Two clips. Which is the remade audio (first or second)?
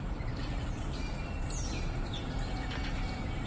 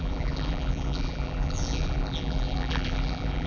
second